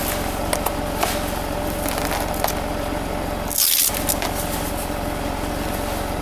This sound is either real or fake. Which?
real